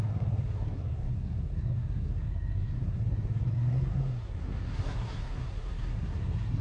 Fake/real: fake